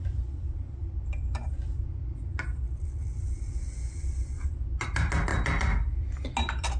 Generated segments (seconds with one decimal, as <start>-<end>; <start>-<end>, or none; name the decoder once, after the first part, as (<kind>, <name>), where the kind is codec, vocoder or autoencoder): none

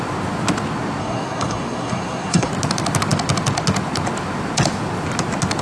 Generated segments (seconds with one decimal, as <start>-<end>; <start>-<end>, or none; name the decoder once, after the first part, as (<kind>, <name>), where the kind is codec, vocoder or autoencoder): 1.0-2.5 (codec, SNAC)

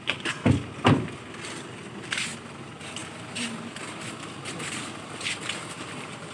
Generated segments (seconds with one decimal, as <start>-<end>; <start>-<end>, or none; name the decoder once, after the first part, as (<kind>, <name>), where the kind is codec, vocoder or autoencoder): none

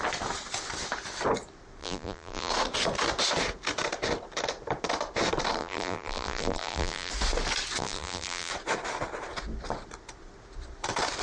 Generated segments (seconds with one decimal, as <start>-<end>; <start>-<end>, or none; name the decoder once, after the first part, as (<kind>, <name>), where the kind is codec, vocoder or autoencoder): 1.8-2.5 (vocoder, BigVGAN v2); 5.6-7.1; 7.8-8.5

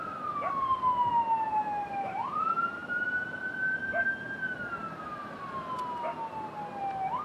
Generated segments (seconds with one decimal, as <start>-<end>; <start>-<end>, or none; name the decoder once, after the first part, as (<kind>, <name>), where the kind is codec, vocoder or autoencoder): 1.8-2.4 (vocoder, BigVGAN v2)

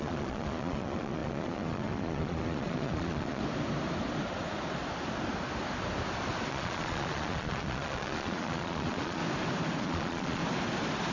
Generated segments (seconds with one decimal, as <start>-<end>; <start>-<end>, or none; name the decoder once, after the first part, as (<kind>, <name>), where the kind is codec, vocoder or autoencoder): 0.0-3.4 (vocoder, Vocos); 6.5-9.2; 9.8-10.4

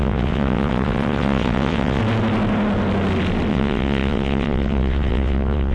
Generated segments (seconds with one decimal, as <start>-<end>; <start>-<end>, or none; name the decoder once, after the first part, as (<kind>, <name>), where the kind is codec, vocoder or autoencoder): 0.0-2.0 (vocoder, WaveNeXt); 3.5-5.7